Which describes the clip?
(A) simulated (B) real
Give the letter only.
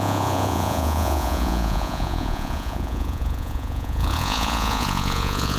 A